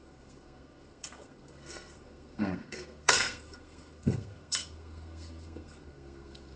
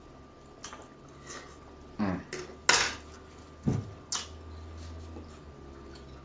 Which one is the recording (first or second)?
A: second